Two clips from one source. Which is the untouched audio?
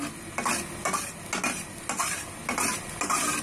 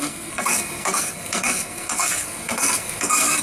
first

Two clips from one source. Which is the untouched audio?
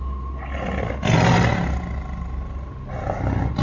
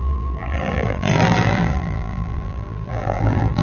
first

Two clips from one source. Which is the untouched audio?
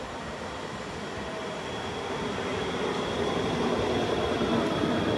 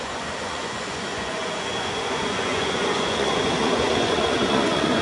first